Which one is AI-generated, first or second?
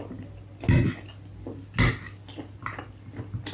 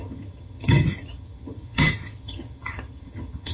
second